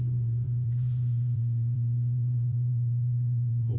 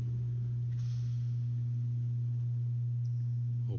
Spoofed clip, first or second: first